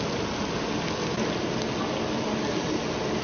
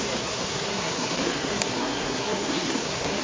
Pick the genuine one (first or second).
first